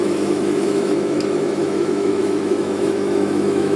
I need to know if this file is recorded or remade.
remade